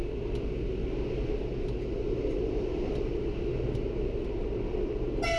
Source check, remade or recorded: recorded